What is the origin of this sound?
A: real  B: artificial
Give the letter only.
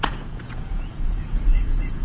B